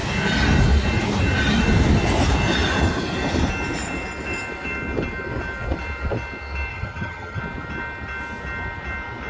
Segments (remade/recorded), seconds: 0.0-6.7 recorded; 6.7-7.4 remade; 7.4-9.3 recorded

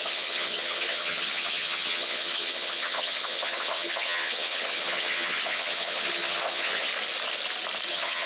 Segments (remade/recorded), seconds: 0.0-6.9 remade; 6.9-7.9 recorded; 7.9-8.3 remade

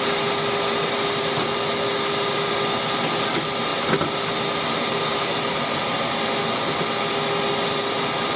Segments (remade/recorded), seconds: 0.0-8.4 recorded